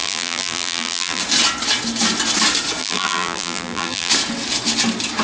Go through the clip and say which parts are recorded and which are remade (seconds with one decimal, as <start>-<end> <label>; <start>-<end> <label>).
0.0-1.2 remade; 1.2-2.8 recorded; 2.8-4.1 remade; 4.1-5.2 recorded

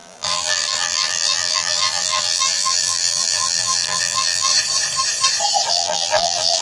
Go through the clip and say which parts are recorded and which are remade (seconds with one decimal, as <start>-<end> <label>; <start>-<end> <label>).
0.0-4.5 remade; 4.5-5.7 recorded; 5.7-6.6 remade

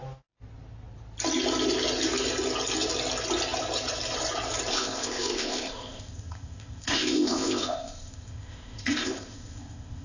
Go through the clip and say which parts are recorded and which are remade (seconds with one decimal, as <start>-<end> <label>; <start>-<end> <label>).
0.0-4.7 recorded; 4.7-10.0 remade

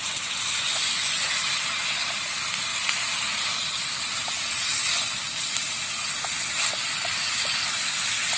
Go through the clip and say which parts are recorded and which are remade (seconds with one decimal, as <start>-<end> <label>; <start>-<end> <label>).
0.0-1.5 remade; 1.5-8.4 recorded

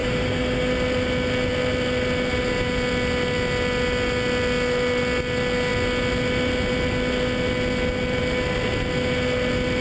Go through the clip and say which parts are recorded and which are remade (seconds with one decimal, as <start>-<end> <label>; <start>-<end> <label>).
0.0-0.7 remade; 0.7-9.8 recorded

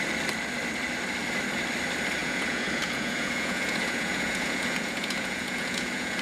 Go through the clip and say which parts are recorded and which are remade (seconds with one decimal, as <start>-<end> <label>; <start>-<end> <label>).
0.0-2.2 recorded; 2.2-6.2 remade